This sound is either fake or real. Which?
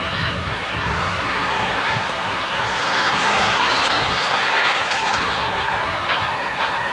fake